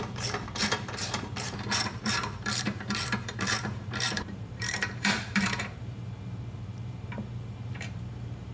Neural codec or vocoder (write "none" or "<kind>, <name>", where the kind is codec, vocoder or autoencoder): vocoder, BigVGAN v2